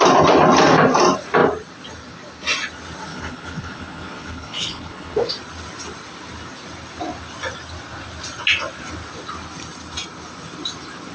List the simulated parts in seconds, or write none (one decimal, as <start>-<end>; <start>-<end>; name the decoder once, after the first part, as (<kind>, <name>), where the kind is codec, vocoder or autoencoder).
3.1-5.3 (codec, HILCodec)